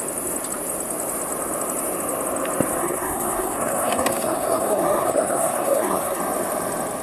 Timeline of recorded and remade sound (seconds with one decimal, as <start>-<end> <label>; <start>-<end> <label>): 0.0-2.8 recorded; 2.8-6.2 remade; 6.2-7.0 recorded